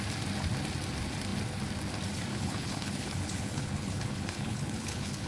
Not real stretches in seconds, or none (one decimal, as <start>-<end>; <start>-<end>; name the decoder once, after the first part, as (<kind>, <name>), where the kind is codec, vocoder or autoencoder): 2.3-5.3 (codec, HILCodec)